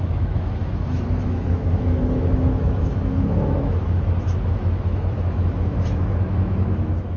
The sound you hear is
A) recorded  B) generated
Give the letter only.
B